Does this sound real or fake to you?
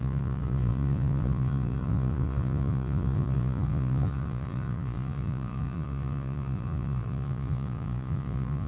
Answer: fake